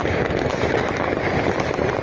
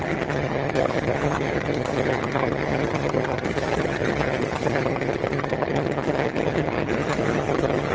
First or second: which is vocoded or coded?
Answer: second